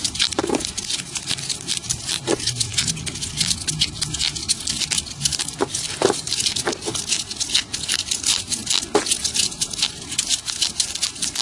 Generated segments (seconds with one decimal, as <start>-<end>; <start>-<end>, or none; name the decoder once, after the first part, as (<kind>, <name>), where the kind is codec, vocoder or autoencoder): 0.0-2.7 (vocoder, BigVGAN v2); 3.9-4.4; 5.2-6.9; 7.8-8.6; 9.4-11.4